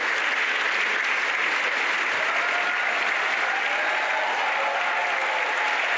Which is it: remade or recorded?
recorded